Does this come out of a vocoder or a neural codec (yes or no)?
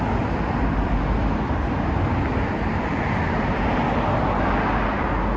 no